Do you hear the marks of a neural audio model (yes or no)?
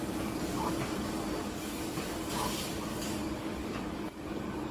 yes